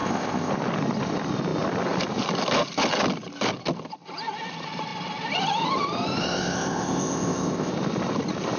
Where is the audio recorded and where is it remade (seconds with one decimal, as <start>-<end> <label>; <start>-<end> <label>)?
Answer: 0.0-0.5 remade; 0.5-6.2 recorded; 6.2-7.7 remade; 7.7-8.6 recorded